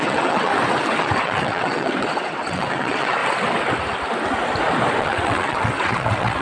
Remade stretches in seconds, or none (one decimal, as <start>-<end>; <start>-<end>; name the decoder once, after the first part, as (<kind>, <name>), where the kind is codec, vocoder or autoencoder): 0.0-0.5 (vocoder, WaveNeXt); 1.0-3.2; 5.0-6.4